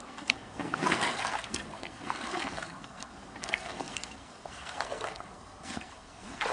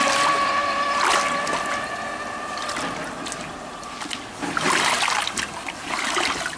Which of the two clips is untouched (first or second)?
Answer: second